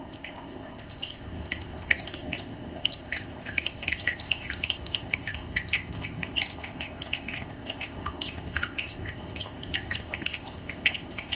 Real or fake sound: fake